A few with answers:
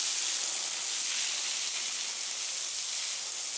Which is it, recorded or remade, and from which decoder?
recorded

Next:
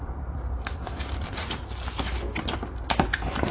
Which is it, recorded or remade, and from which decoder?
recorded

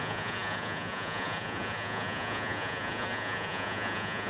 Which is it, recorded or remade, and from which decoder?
remade, vocoder, Vocos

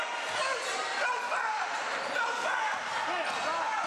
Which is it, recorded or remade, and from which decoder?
recorded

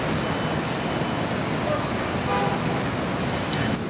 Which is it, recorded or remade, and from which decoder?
recorded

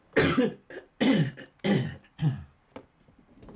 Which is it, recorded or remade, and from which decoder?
recorded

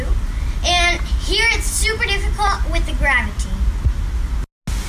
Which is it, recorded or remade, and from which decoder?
recorded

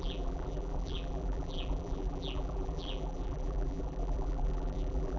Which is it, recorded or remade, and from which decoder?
remade, vocoder, BigVGAN v2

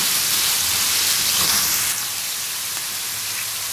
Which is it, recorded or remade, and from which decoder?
remade, vocoder, BigVGAN v2